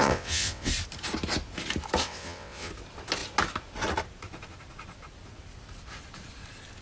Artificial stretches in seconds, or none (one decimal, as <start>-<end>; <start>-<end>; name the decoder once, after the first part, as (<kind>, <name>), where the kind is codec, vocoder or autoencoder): 0.0-0.7 (vocoder, WaveNeXt); 2.0-2.7